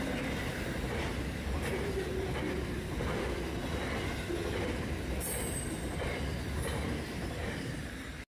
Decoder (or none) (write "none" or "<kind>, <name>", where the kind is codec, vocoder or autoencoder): none